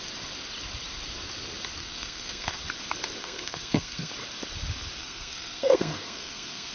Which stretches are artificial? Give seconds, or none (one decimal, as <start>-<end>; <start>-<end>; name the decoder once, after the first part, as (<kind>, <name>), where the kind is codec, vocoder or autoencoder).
1.8-2.6 (codec, SNAC); 3.2-4.1; 5.0-6.7